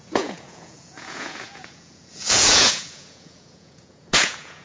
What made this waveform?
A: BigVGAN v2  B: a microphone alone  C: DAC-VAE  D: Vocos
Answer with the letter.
D